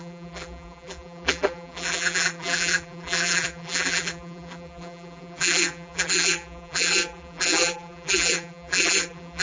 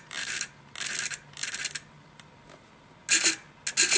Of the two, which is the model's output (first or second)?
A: first